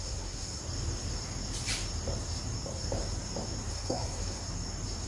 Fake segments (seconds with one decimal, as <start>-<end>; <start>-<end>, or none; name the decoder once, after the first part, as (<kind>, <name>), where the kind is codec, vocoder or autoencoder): 0.0-0.6 (codec, SNAC); 3.7-4.4